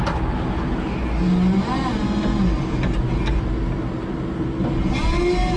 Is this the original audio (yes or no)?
yes